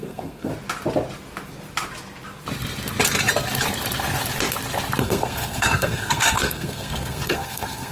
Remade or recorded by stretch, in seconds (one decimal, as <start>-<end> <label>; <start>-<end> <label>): 0.0-0.5 remade; 0.5-5.0 recorded; 5.0-7.9 remade